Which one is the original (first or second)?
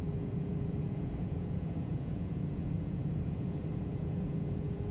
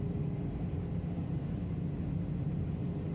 second